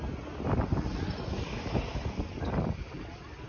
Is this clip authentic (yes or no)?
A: yes